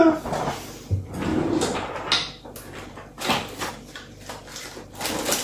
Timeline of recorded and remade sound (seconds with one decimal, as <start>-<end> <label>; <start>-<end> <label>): 0.0-5.4 recorded